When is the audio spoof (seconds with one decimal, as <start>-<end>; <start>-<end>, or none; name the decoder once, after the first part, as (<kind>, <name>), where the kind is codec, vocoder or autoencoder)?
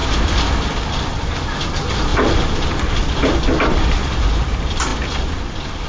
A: 1.2-4.9 (vocoder, BigVGAN v2); 5.4-5.9